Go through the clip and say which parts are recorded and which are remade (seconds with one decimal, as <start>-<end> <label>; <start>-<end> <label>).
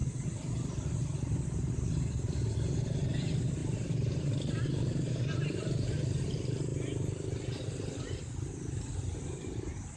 0.0-1.7 remade; 1.7-3.6 recorded; 3.6-5.2 remade; 5.2-10.0 recorded